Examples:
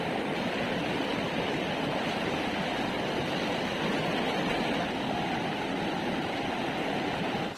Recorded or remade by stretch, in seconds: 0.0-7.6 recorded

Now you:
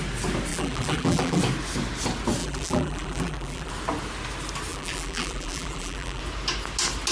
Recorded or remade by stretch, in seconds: 0.0-0.5 recorded; 0.5-1.4 remade; 1.4-2.4 recorded; 2.4-3.7 remade; 3.7-4.7 recorded; 4.7-6.2 remade; 6.2-7.1 recorded

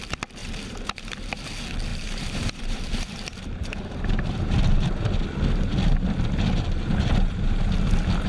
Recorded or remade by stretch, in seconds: 0.0-0.4 recorded; 0.4-1.4 remade; 1.4-1.9 recorded; 1.9-5.0 remade; 5.0-8.3 recorded

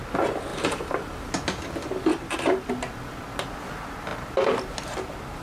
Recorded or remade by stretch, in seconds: 0.0-0.5 recorded; 0.5-1.2 remade; 1.2-2.1 recorded; 2.1-2.7 remade; 2.7-5.4 recorded

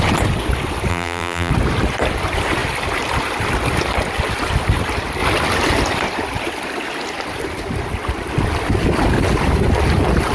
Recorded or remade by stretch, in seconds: 0.0-0.9 recorded; 0.9-1.5 remade; 1.5-10.3 recorded

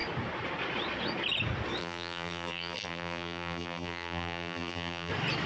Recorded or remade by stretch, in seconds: 0.0-1.8 recorded; 1.8-5.1 remade; 5.1-5.5 recorded